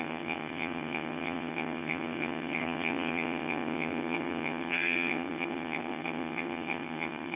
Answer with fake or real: fake